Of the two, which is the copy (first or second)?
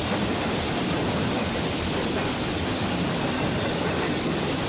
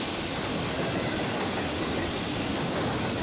first